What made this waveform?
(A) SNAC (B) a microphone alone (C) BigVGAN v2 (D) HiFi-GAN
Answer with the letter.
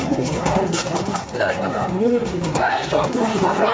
A